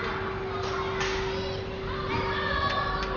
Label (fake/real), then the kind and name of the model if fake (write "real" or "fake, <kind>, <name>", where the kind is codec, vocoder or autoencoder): real